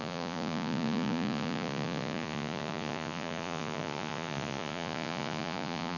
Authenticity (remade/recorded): remade